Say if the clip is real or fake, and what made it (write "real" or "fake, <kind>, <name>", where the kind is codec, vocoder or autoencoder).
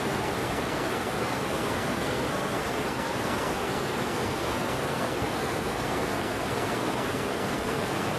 fake, codec, SNAC